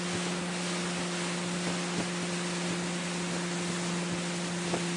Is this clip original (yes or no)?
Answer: yes